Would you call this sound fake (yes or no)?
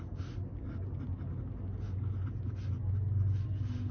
no